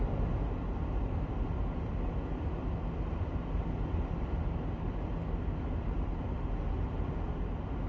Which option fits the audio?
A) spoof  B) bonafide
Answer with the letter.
B